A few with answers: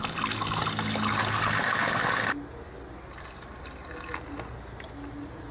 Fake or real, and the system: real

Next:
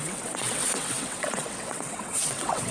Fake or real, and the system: fake, vocoder, WaveNeXt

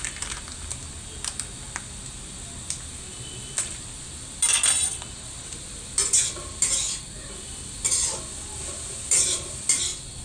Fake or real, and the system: real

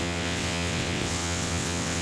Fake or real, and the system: fake, vocoder, WaveNeXt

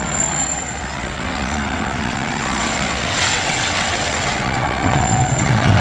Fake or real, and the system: fake, vocoder, WaveNeXt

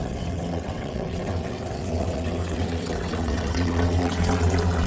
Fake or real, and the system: fake, vocoder, WaveNeXt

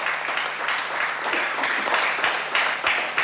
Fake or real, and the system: real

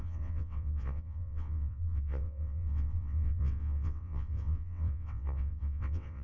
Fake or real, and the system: fake, vocoder, WaveNeXt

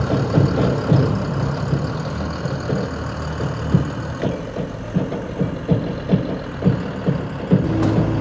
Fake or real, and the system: real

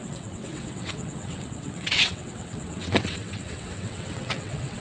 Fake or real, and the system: fake, vocoder, WaveNeXt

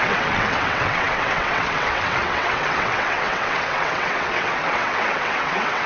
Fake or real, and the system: fake, vocoder, WaveNeXt